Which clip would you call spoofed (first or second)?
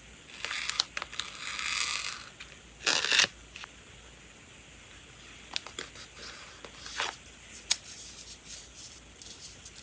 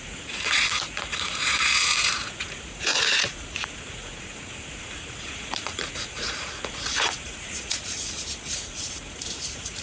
second